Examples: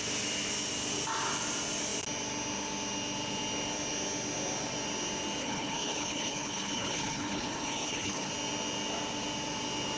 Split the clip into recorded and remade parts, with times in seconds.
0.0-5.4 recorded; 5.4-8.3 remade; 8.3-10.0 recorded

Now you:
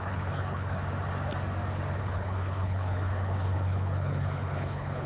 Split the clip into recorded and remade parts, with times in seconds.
0.0-0.8 remade; 0.8-2.0 recorded; 2.0-5.1 remade

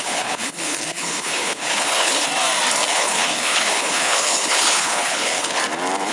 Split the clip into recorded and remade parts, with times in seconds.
0.0-2.3 remade; 2.3-2.9 recorded; 2.9-5.6 remade; 5.6-6.1 recorded

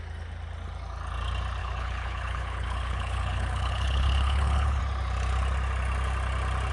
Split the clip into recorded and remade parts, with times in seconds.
0.0-1.6 recorded; 1.6-4.8 remade; 4.8-6.7 recorded